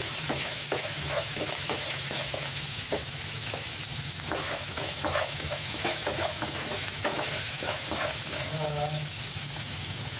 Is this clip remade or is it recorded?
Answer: remade